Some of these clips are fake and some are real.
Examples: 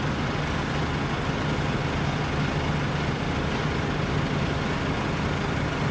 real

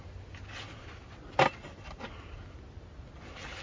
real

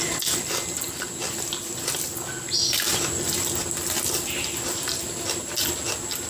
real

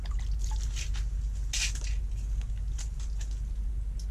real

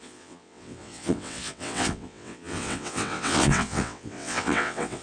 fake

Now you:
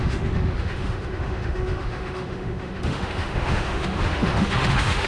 fake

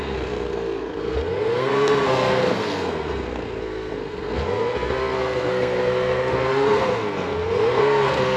fake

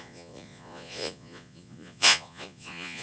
fake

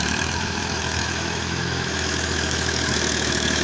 fake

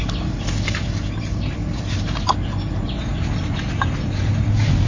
real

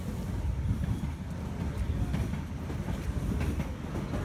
real